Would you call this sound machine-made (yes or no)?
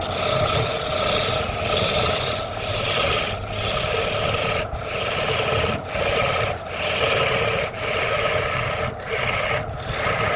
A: no